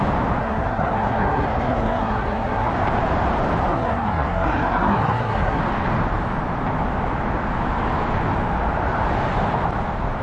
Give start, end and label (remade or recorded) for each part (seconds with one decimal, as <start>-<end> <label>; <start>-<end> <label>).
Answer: 0.0-0.4 recorded; 0.4-2.7 remade; 2.7-3.7 recorded; 3.7-5.6 remade; 5.6-10.2 recorded